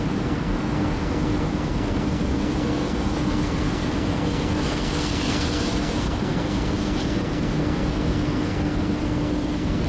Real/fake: fake